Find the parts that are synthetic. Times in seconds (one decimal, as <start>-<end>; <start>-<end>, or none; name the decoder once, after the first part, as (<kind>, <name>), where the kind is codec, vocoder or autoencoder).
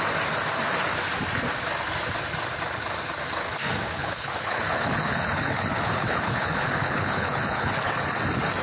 4.0-7.9 (codec, HILCodec)